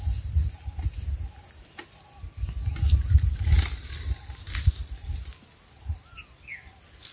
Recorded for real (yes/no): yes